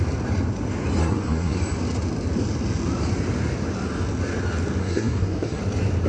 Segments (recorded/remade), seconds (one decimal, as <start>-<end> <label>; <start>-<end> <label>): 0.0-1.0 recorded; 1.0-1.6 remade; 1.6-4.8 recorded; 4.8-5.6 remade; 5.6-6.1 recorded